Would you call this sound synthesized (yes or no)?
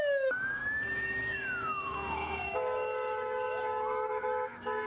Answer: yes